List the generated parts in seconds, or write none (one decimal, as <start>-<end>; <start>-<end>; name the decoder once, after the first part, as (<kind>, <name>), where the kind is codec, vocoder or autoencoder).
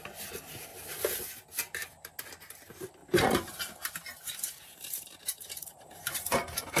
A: 3.0-6.8 (vocoder, BigVGAN v2)